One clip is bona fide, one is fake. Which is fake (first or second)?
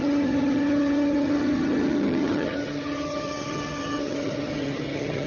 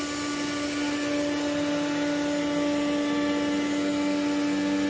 first